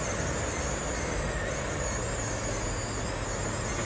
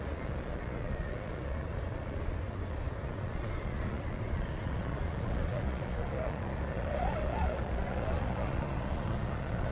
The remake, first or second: second